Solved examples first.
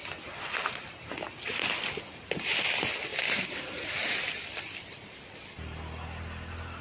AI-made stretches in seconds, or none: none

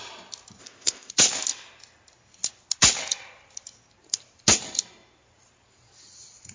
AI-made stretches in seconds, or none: 0.6-1.1 (codec, ZipCodec)

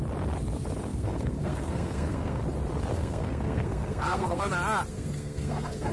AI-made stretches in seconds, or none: 0.9-2.4 (codec, SNAC); 2.9-4.5; 4.9-5.9

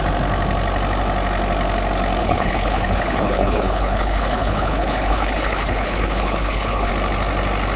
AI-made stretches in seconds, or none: 2.2-6.9 (codec, HILCodec)

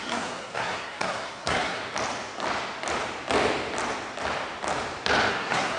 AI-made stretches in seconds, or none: 0.0-1.8 (codec, SNAC); 5.3-5.8

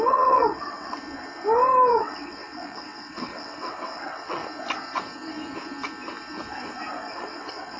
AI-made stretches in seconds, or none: 0.0-1.0 (vocoder, WaveNeXt); 1.9-4.4; 7.1-7.8

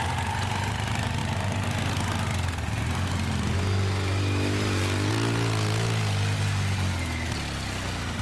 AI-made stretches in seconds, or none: none